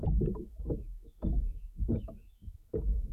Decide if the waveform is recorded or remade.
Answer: remade